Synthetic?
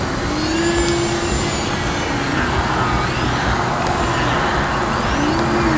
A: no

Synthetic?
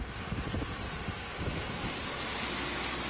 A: no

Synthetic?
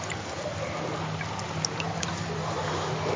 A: no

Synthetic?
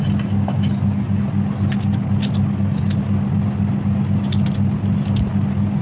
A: no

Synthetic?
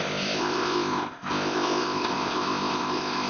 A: yes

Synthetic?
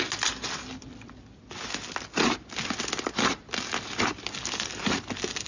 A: no